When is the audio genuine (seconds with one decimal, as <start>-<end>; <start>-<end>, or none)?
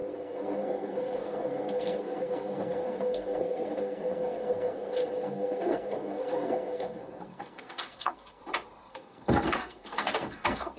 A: 8.4-8.9